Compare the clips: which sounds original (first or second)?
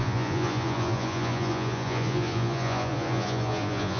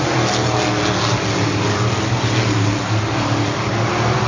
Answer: second